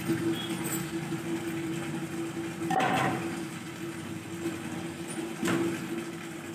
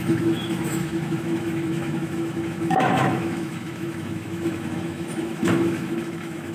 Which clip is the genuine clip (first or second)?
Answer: first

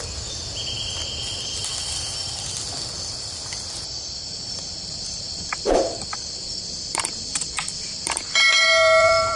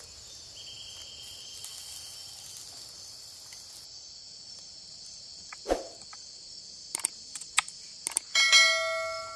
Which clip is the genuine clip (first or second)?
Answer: second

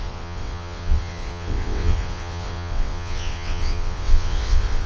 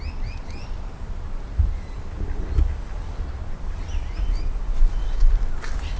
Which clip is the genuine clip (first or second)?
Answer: second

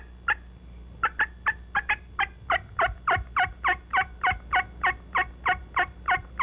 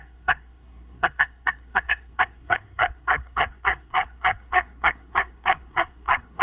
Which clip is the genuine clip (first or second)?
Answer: first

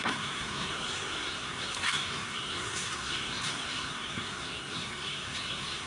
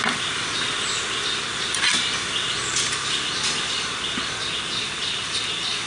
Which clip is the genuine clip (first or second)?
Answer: second